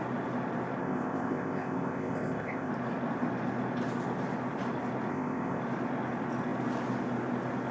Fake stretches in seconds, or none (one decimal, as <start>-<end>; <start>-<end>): 0.8-2.7; 5.1-5.6